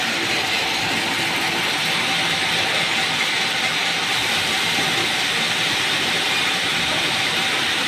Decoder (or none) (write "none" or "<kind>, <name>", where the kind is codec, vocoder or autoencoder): none